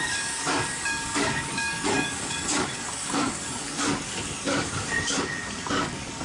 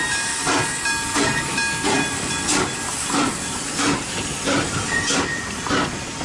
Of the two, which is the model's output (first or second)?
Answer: first